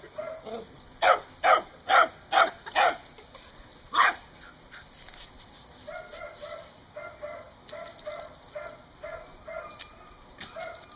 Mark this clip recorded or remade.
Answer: recorded